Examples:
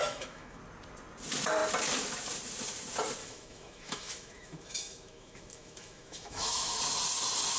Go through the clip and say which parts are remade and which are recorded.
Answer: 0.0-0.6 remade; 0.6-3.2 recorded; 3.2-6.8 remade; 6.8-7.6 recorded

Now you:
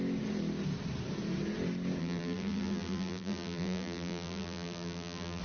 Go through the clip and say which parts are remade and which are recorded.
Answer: 0.0-2.0 recorded; 2.0-5.4 remade

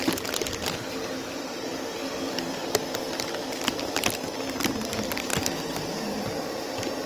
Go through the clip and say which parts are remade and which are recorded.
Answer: 0.0-7.1 recorded

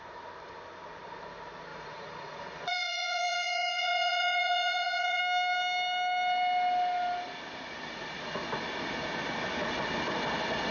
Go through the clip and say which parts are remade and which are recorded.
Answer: 0.0-1.7 recorded; 1.7-5.2 remade; 5.2-10.7 recorded

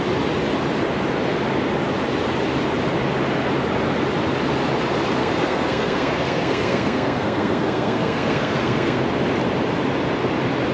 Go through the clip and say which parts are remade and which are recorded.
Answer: 0.0-5.2 recorded; 5.2-9.0 remade; 9.0-10.7 recorded

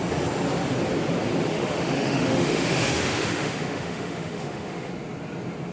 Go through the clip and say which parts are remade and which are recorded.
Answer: 0.0-1.5 recorded; 1.5-4.9 remade; 4.9-5.7 recorded